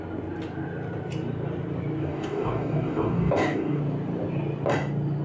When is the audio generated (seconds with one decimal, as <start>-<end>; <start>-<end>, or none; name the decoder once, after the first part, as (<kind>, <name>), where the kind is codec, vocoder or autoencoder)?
2.0-3.8 (codec, DAC)